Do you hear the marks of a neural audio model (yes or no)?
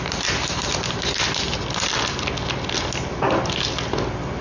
no